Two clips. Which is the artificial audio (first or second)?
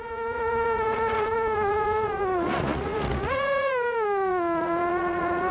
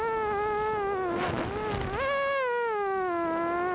first